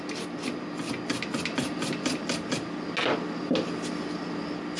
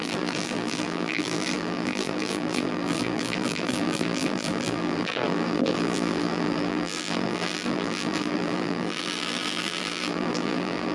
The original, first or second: first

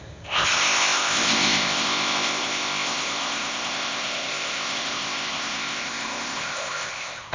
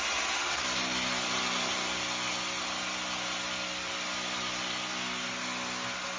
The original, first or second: second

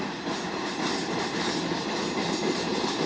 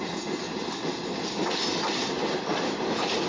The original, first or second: second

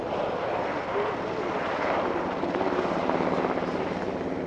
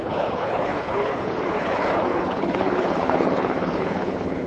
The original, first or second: first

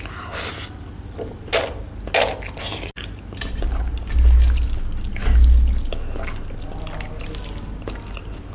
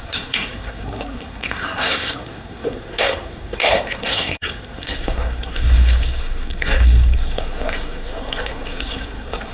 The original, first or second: first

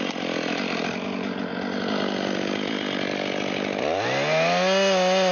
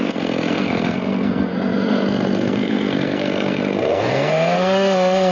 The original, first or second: first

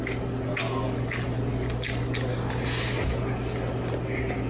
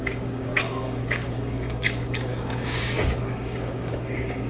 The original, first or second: first